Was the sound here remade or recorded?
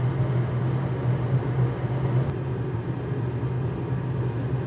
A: recorded